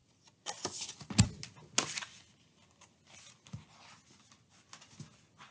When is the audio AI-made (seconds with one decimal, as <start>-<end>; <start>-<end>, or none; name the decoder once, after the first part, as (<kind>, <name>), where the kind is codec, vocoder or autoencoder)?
none